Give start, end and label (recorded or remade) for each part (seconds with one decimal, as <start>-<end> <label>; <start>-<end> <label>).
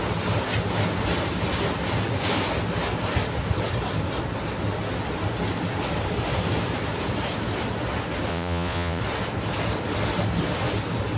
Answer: 0.0-8.3 recorded; 8.3-9.0 remade; 9.0-11.2 recorded